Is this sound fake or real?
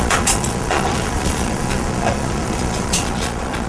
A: fake